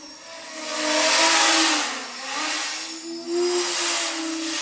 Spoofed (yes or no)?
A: no